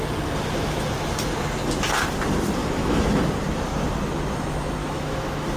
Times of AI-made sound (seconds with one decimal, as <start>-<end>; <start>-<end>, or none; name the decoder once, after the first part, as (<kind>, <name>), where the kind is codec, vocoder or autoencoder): 2.6-3.2 (autoencoder, DAC-VAE); 4.8-5.6